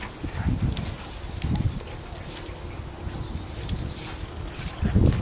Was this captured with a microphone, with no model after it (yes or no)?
yes